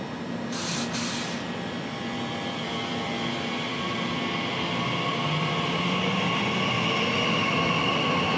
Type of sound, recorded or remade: recorded